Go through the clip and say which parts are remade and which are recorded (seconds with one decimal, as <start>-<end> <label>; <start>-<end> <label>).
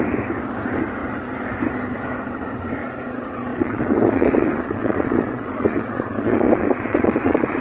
0.0-3.5 recorded; 3.5-7.6 remade